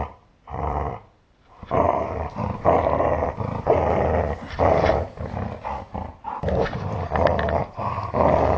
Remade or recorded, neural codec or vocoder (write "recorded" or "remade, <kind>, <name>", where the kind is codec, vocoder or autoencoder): remade, vocoder, BigVGAN v2